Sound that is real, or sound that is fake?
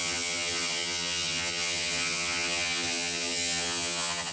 fake